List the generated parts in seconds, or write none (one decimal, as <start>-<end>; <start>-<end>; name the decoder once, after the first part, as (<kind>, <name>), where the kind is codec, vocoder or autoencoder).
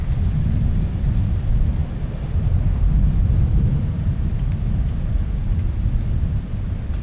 1.8-4.3 (vocoder, BigVGAN v2)